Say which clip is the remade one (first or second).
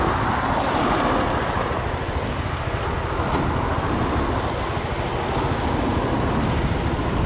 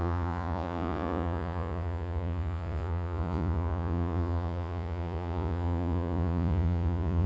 second